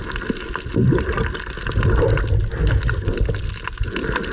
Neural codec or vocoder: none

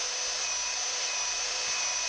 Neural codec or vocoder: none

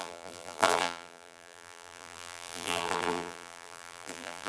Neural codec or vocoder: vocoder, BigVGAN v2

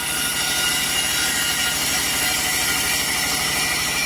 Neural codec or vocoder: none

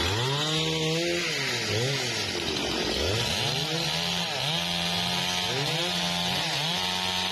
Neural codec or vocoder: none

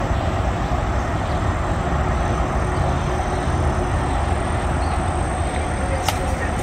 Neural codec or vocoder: none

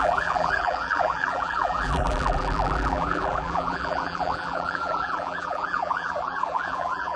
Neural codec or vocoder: vocoder, BigVGAN v2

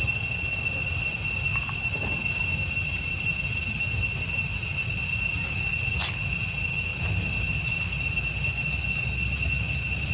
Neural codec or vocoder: none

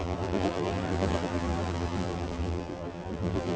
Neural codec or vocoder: vocoder, BigVGAN v2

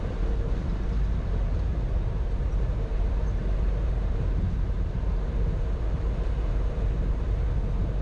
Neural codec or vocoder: vocoder, BigVGAN v2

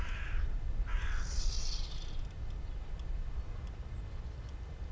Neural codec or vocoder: none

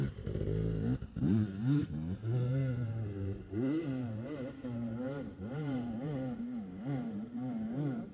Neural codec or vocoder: vocoder, BigVGAN v2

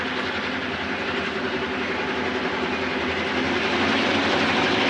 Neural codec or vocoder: none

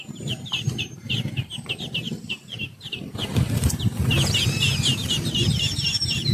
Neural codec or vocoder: vocoder, BigVGAN v2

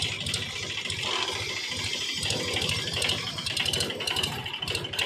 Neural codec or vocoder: none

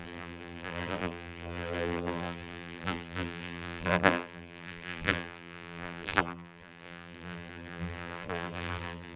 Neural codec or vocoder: vocoder, BigVGAN v2